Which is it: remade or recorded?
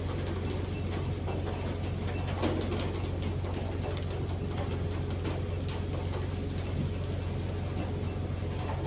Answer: recorded